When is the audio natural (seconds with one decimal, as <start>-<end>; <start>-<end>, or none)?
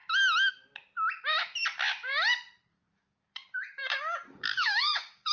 0.0-2.7